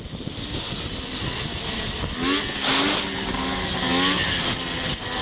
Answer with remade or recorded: recorded